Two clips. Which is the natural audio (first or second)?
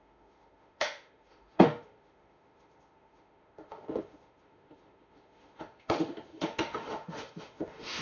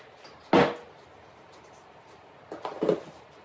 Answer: second